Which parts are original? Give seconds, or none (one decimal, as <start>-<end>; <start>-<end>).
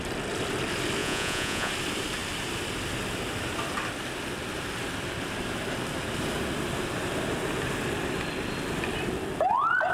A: 0.0-1.0; 1.7-9.9